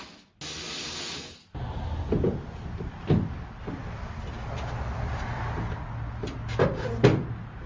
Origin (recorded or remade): recorded